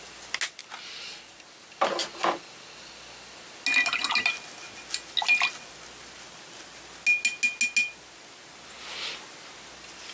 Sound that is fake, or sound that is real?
real